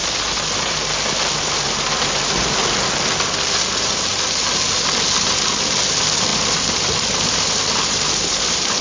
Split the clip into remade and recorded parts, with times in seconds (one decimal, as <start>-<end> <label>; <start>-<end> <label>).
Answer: 0.0-2.3 remade; 2.3-6.3 recorded; 6.3-8.8 remade